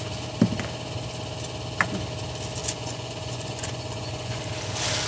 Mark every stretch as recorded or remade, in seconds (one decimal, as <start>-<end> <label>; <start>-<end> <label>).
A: 0.0-2.6 recorded; 2.6-4.4 remade; 4.4-5.1 recorded